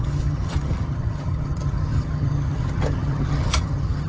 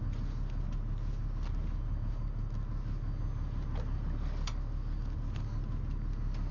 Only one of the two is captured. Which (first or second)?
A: second